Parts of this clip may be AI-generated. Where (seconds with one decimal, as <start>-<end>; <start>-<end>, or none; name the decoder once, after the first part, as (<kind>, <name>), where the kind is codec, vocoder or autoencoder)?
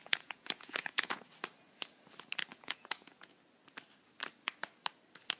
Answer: 0.0-1.3 (vocoder, Vocos); 2.5-3.4